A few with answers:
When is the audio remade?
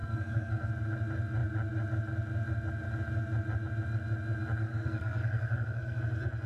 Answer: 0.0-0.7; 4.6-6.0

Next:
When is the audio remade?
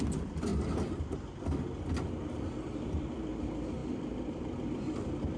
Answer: none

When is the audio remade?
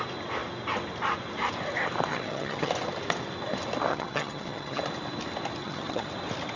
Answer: 2.1-2.7; 3.9-4.8; 5.6-6.1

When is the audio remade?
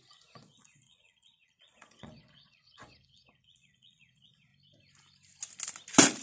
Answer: 0.0-4.5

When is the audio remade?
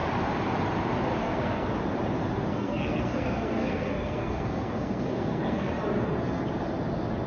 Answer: 1.2-1.8; 2.5-5.7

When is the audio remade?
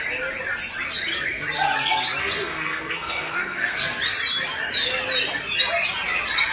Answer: 2.2-4.0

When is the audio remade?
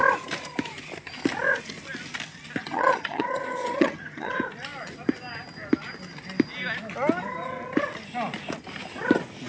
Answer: 2.6-4.3